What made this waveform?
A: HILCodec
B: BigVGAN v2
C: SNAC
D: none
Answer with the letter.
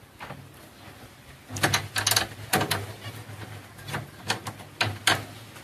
D